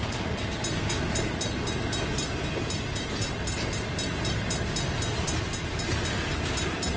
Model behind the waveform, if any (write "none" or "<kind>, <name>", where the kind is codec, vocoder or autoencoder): none